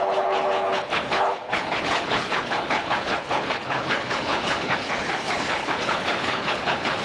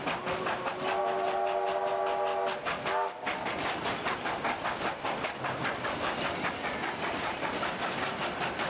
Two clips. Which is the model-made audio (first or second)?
first